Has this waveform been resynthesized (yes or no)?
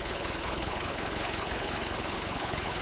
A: yes